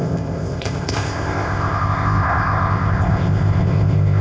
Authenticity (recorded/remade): remade